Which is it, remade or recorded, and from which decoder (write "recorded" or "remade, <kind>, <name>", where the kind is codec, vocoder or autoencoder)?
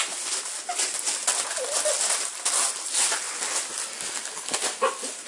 recorded